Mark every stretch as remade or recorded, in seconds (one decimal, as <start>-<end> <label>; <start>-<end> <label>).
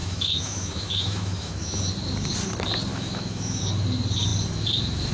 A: 0.0-1.8 remade; 1.8-2.9 recorded; 2.9-3.6 remade; 3.6-5.1 recorded